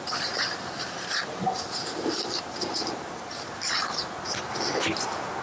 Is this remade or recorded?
recorded